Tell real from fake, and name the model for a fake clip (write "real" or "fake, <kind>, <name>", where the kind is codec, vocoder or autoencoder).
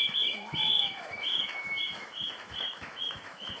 fake, autoencoder, DAC-VAE